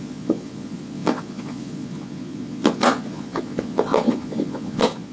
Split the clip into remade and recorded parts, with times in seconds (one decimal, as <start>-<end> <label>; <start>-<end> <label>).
0.0-5.1 remade